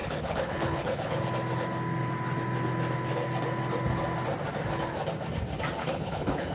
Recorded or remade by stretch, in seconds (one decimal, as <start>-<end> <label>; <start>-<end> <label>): 0.0-1.2 remade; 1.2-5.8 recorded; 5.8-6.5 remade